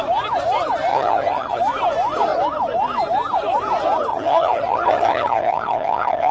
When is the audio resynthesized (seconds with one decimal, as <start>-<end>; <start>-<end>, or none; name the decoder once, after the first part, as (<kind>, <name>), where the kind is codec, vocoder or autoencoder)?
0.9-1.6 (vocoder, HiFi-GAN); 4.1-6.3